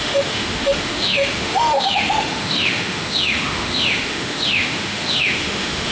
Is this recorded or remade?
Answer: remade